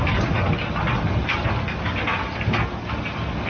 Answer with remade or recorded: recorded